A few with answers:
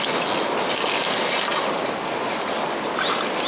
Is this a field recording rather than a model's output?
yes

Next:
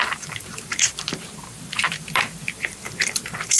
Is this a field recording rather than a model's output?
no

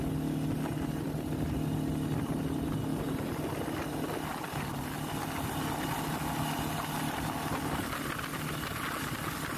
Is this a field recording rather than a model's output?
yes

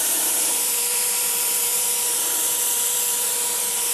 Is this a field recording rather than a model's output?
no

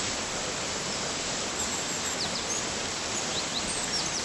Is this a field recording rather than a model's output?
no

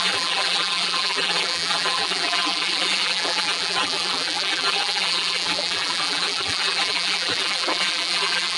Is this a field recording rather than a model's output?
no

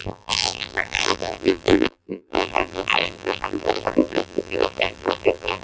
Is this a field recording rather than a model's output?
no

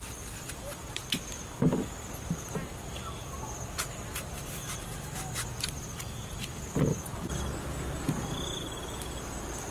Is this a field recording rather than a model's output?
yes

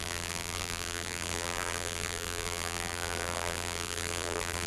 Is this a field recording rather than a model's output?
no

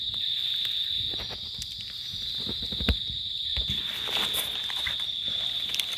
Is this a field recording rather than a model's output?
yes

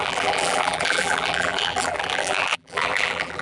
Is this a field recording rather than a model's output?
no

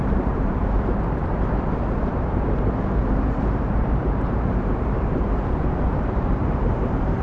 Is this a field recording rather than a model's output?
no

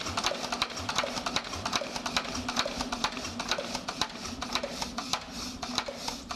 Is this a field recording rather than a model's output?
yes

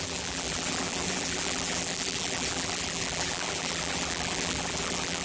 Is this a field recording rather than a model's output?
no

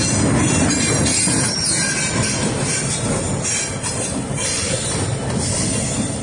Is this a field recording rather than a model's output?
yes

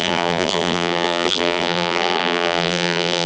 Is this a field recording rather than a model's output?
no